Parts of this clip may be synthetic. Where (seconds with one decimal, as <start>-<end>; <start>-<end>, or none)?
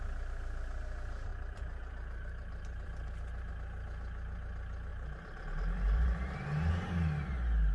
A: 1.3-3.5; 4.9-6.7